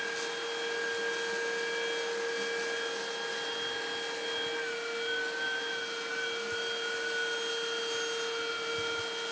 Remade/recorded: recorded